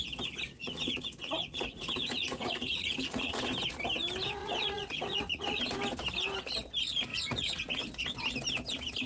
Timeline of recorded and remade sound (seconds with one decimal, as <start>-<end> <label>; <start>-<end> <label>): 0.0-0.6 recorded; 0.6-3.4 remade; 3.4-4.4 recorded; 4.4-5.6 remade; 5.6-7.1 recorded; 7.1-7.8 remade; 7.8-9.1 recorded